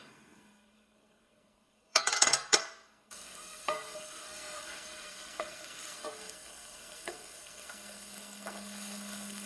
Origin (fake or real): fake